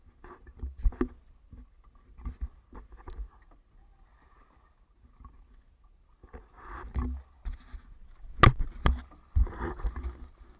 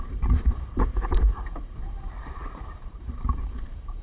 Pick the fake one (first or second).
second